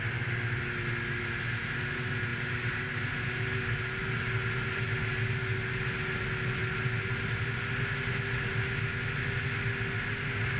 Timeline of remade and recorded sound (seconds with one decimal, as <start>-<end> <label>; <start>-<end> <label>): 0.0-10.6 recorded